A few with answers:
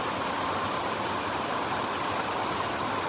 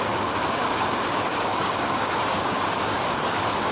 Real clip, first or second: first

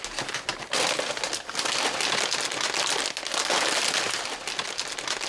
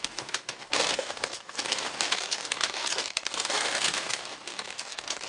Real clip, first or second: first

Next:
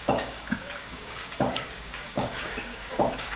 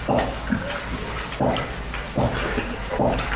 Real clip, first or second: second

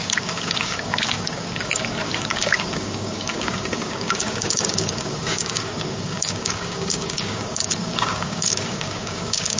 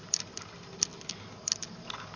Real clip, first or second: second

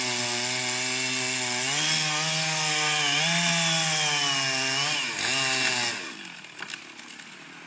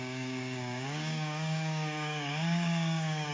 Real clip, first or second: first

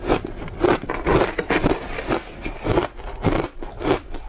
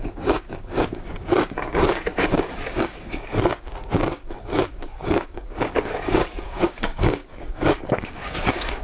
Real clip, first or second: first